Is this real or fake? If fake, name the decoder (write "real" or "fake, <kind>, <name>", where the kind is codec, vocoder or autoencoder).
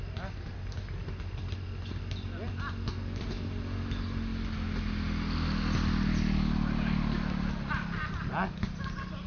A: real